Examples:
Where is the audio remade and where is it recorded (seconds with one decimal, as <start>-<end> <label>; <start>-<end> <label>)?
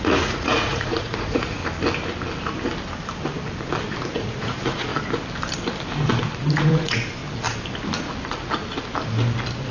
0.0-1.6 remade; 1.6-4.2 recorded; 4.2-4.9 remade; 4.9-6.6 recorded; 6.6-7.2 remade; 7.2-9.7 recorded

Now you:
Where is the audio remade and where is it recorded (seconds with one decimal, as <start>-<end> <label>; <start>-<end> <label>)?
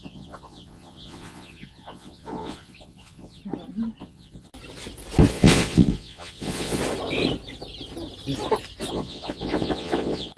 0.0-3.4 remade; 3.4-4.0 recorded; 4.0-4.5 remade; 4.5-5.3 recorded; 5.3-6.8 remade; 6.8-8.9 recorded; 8.9-10.4 remade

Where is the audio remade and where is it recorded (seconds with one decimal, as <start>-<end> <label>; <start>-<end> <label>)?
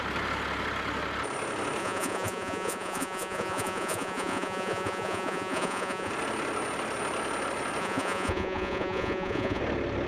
0.0-1.8 recorded; 1.8-6.1 remade; 6.1-7.8 recorded; 7.8-9.6 remade; 9.6-10.1 recorded